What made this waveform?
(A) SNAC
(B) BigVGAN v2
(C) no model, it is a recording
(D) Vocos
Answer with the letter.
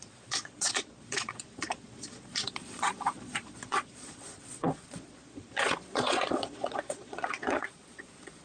D